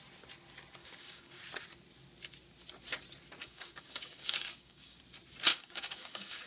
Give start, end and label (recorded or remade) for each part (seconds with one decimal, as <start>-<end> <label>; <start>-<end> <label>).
0.0-0.8 recorded; 0.8-1.4 remade; 1.4-3.4 recorded; 3.4-5.0 remade; 5.0-5.5 recorded; 5.5-6.5 remade